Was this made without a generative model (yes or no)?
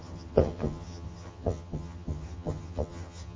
no